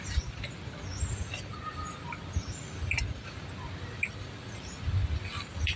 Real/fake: real